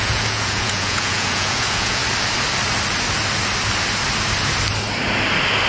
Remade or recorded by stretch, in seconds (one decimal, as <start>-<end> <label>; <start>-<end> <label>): 0.0-2.0 remade; 2.0-5.7 recorded